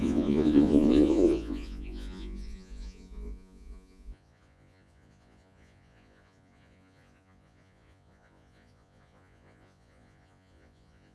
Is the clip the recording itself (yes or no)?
no